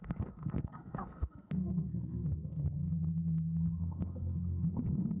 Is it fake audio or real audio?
fake